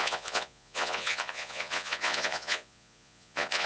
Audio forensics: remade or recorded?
remade